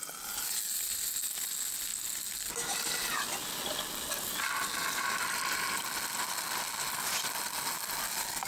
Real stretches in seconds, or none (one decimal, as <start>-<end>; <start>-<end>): 0.0-8.5